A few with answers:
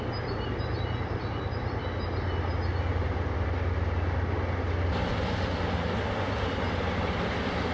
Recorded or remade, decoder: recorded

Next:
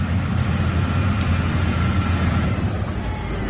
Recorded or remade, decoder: recorded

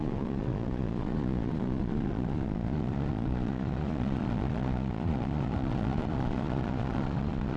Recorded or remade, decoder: remade, vocoder, Vocos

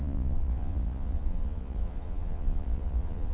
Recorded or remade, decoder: remade, vocoder, Vocos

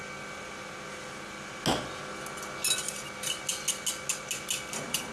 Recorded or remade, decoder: recorded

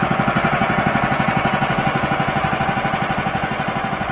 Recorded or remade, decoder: remade, vocoder, Vocos